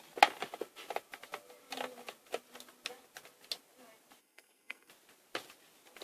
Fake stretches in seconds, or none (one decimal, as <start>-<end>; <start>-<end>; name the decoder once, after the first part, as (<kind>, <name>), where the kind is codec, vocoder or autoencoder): 4.2-4.9 (codec, SNAC)